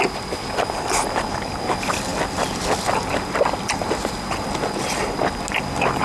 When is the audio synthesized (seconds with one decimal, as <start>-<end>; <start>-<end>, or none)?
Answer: none